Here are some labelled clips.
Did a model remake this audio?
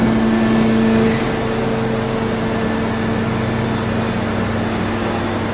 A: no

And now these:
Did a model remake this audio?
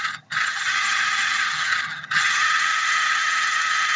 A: yes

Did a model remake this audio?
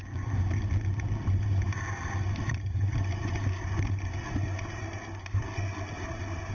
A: no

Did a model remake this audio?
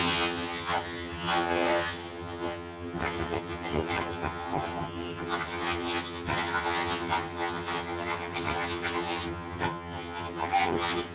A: yes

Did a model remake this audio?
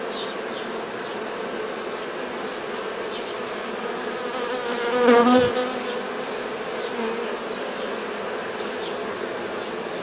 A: no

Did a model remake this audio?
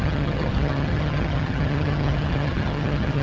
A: yes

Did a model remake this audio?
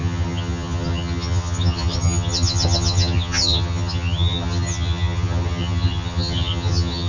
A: yes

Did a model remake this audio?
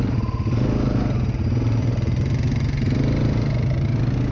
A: no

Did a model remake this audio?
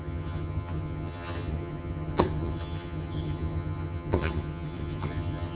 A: yes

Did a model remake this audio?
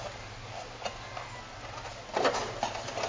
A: no